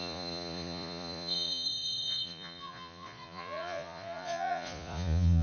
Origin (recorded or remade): remade